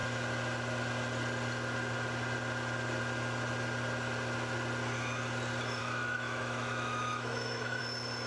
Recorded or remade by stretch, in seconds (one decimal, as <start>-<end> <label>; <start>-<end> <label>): 0.0-5.8 recorded; 5.8-7.8 remade; 7.8-8.3 recorded